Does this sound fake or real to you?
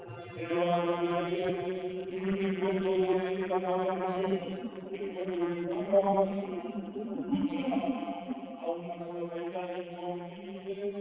fake